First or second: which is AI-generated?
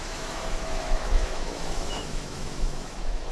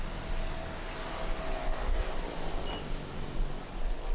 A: first